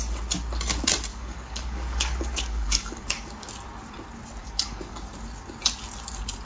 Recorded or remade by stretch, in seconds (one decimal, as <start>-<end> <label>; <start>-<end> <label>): 0.0-1.1 recorded; 1.1-3.5 remade; 3.5-4.4 recorded; 4.4-5.1 remade; 5.1-6.4 recorded